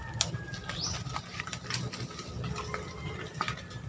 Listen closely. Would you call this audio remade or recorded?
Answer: recorded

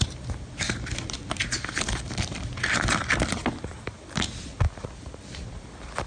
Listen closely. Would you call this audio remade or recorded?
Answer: recorded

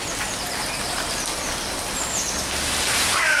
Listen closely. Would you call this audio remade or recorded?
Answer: recorded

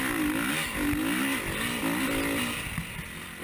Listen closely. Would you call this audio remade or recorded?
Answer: recorded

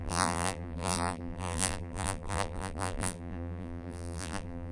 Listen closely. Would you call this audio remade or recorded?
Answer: remade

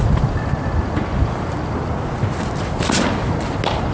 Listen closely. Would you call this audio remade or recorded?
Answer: recorded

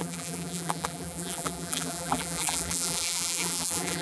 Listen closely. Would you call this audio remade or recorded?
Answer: remade